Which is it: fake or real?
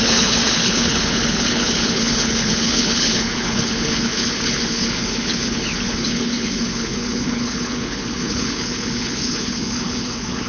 fake